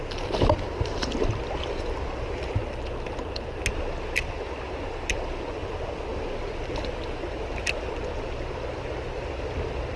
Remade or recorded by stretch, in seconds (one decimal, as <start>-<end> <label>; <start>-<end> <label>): 0.0-10.0 recorded